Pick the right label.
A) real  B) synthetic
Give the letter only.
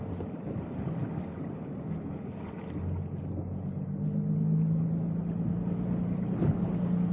A